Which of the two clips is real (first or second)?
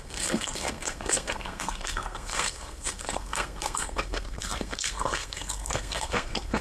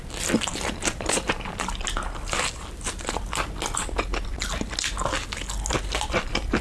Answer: second